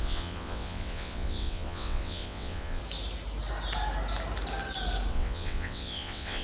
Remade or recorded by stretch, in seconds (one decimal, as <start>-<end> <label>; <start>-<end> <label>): 0.0-2.8 remade; 2.8-5.1 recorded; 5.1-6.4 remade